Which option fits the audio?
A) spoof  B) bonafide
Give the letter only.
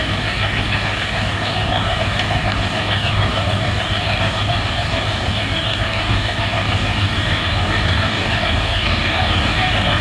A